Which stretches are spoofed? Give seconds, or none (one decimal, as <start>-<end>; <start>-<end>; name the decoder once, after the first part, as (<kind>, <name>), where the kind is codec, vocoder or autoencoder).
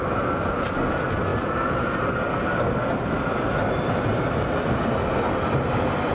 none